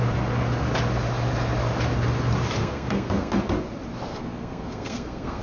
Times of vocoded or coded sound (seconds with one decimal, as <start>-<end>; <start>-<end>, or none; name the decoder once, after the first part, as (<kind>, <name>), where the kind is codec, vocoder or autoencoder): 2.6-3.4 (codec, SNAC); 4.1-5.4